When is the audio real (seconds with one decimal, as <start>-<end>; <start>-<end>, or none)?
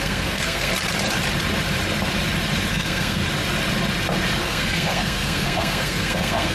0.7-2.7; 3.2-4.4